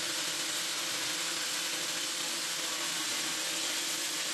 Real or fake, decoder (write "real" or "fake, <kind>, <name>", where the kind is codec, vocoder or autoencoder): real